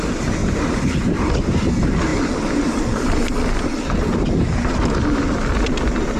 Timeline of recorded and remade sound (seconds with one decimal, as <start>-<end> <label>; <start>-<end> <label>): 0.0-0.4 recorded; 0.4-1.7 remade; 1.7-6.2 recorded